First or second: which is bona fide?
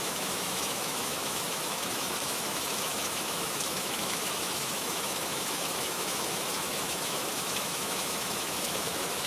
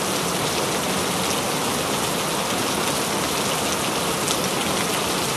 second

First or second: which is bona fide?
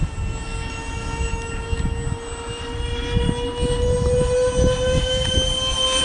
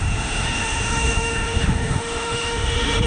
first